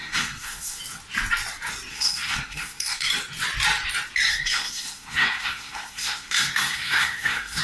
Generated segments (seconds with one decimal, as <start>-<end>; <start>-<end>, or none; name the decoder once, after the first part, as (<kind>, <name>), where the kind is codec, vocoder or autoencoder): 0.0-0.8 (codec, SNAC); 1.9-3.1; 4.3-7.6